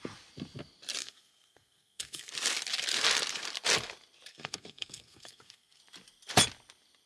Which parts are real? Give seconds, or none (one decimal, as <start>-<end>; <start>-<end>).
0.0-1.0; 2.3-4.3; 5.8-7.1